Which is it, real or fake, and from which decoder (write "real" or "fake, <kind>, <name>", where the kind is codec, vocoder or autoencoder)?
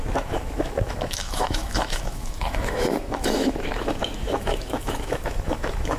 fake, autoencoder, DAC-VAE